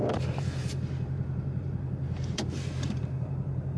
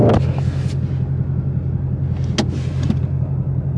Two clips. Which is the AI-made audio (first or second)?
first